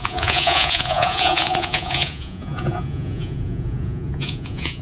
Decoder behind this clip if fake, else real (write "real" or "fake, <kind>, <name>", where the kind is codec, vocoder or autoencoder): fake, vocoder, Vocos